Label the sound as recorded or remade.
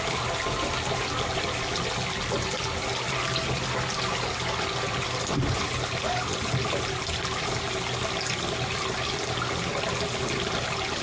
recorded